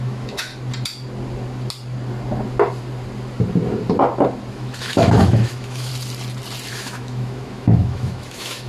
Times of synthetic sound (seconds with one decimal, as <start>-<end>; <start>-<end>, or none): 0.0-0.5; 4.5-5.9; 6.7-8.7